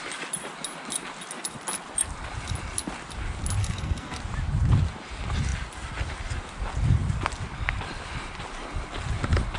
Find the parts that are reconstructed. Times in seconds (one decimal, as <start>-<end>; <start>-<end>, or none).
3.6-4.2